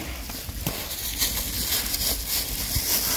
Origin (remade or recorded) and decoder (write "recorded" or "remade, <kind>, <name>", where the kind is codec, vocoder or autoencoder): recorded